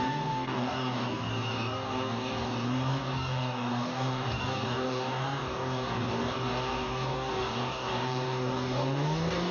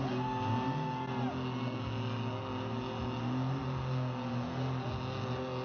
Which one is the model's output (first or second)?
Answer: first